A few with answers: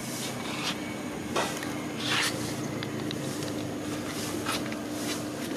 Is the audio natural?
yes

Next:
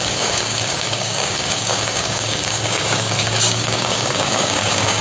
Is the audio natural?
no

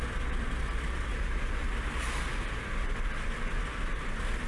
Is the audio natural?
yes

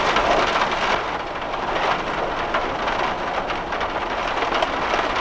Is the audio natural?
yes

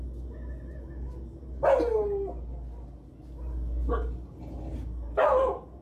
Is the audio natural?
yes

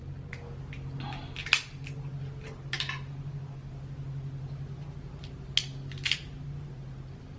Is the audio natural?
yes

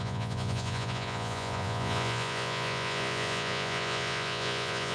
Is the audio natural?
no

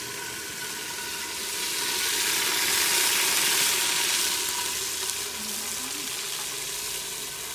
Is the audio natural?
yes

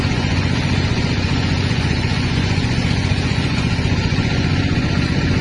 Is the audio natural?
no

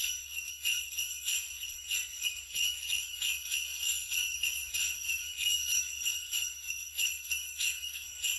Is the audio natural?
no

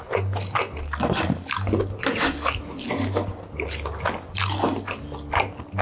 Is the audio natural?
yes